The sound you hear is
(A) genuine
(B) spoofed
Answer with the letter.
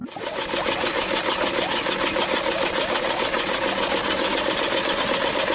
A